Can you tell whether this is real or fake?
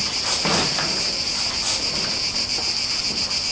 real